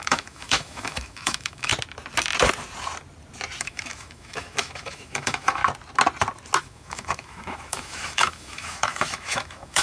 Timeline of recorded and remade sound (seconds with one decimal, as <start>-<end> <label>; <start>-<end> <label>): 0.0-1.7 remade; 1.7-3.6 recorded; 3.6-5.6 remade; 5.6-6.6 recorded; 6.6-9.8 remade

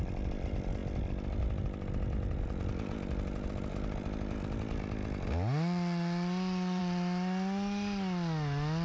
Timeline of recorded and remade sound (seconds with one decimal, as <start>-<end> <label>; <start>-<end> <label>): 0.0-8.8 recorded

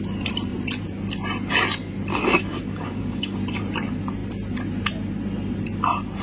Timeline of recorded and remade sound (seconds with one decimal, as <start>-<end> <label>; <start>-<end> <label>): 0.0-2.1 recorded; 2.1-3.4 remade; 3.4-6.2 recorded

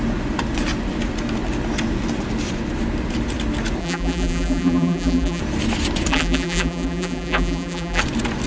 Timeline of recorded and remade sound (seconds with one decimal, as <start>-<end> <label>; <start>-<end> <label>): 0.0-3.8 recorded; 3.8-5.4 remade; 5.4-6.1 recorded; 6.1-8.0 remade; 8.0-8.5 recorded

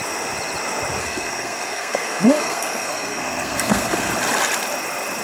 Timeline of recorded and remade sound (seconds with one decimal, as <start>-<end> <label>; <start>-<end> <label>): 0.0-1.0 recorded; 1.0-4.1 remade; 4.1-5.2 recorded